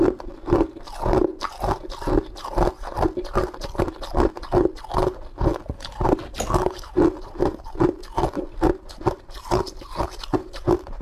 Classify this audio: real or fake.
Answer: real